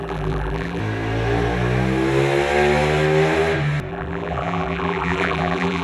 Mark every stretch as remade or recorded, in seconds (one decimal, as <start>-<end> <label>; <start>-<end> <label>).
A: 0.0-0.8 remade; 0.8-3.9 recorded; 3.9-5.8 remade